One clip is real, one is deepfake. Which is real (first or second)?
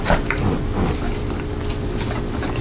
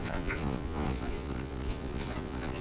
first